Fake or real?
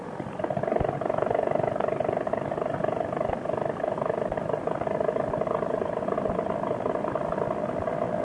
real